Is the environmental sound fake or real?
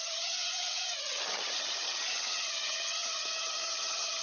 fake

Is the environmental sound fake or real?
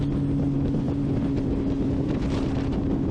real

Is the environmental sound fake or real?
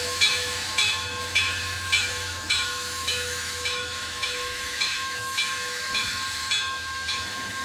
fake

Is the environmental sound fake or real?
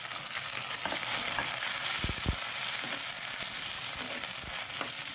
real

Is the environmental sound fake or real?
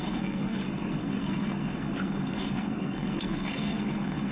fake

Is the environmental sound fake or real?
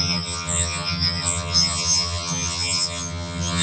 fake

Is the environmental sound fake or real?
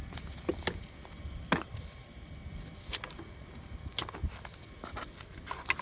real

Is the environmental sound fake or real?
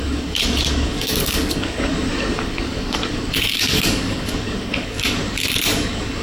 fake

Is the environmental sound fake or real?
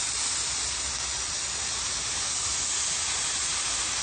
real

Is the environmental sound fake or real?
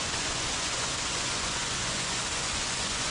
fake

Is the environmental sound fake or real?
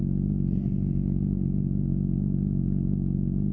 real